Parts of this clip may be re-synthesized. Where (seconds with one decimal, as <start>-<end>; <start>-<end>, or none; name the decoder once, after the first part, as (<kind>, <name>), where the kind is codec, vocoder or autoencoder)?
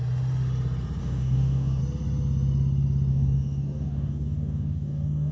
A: 1.0-1.8 (codec, DAC); 3.1-5.3